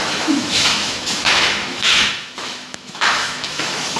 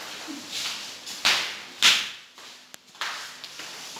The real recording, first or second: second